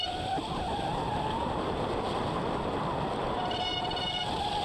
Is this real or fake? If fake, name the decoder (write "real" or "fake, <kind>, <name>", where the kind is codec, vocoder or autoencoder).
real